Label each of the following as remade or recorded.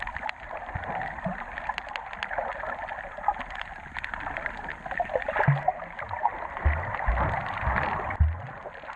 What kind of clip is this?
recorded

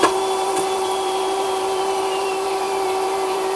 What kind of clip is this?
remade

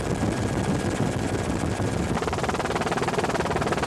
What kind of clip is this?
recorded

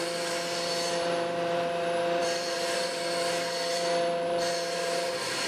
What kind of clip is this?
remade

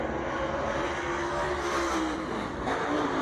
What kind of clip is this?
recorded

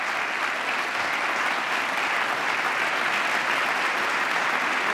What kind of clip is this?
recorded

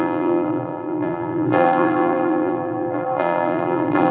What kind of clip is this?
remade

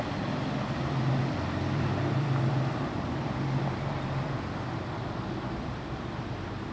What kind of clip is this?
remade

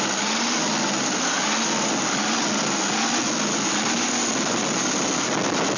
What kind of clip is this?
recorded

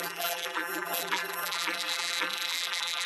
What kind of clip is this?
remade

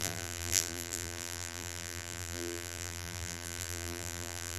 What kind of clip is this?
remade